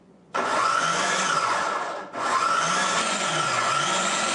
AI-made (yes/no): yes